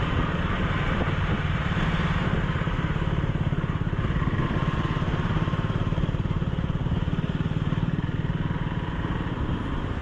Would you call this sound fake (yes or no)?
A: yes